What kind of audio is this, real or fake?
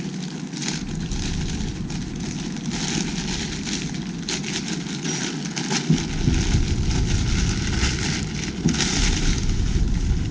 real